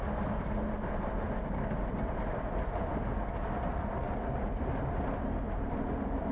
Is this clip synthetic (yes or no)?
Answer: no